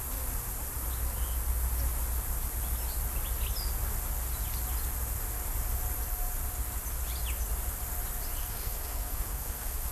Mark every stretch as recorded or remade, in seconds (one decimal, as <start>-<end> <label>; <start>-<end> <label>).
0.0-8.4 recorded; 8.4-9.9 remade